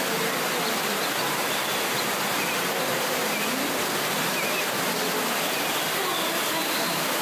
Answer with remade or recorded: recorded